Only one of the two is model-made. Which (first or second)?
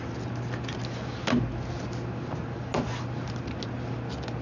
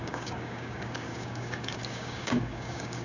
second